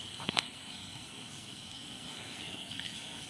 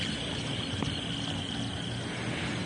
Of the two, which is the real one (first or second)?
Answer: second